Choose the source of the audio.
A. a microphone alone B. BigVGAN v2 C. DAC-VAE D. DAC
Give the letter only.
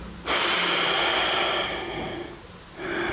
A